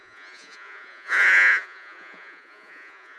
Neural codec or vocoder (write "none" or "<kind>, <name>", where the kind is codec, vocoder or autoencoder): vocoder, Vocos